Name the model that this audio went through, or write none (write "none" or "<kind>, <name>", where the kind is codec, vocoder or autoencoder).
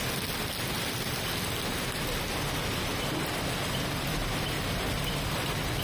none